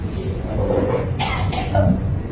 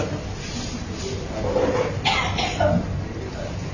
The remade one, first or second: first